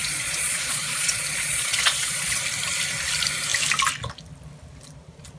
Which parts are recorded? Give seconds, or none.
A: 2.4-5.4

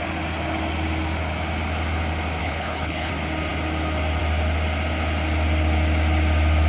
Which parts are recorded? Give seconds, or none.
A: 0.0-2.4; 3.1-6.7